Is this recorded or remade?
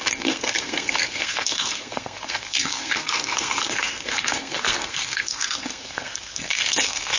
remade